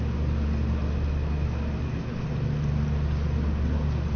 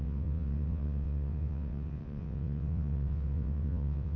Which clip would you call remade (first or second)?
second